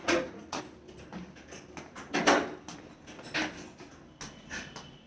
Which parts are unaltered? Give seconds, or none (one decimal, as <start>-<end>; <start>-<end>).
0.6-5.1